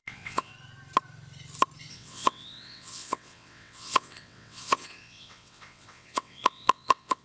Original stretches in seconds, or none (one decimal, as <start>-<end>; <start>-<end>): 0.5-1.9